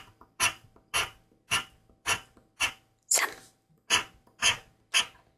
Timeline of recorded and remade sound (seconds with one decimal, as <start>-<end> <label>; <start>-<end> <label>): 0.0-5.4 recorded